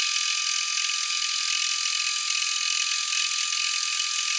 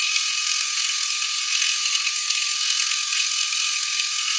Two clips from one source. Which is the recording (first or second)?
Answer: first